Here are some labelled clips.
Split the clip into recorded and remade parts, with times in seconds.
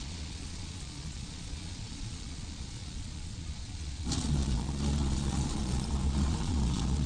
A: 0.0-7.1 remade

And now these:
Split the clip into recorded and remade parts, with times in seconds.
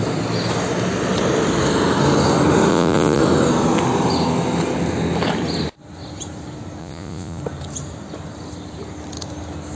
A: 0.0-2.7 recorded; 2.7-3.2 remade; 3.2-6.8 recorded; 6.8-7.4 remade; 7.4-9.7 recorded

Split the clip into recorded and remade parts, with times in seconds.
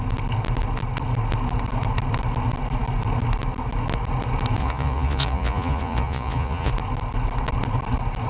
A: 0.0-4.6 recorded; 4.6-6.7 remade; 6.7-8.3 recorded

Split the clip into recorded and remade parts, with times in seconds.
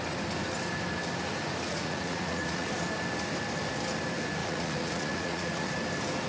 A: 0.0-1.7 recorded; 1.7-2.7 remade; 2.7-4.4 recorded; 4.4-5.7 remade; 5.7-6.3 recorded